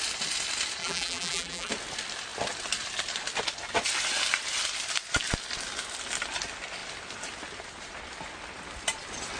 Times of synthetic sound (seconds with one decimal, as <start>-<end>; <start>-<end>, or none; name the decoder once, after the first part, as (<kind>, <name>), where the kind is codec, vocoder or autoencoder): 0.8-1.7 (vocoder, BigVGAN v2)